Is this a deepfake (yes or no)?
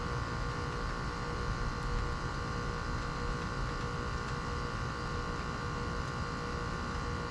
no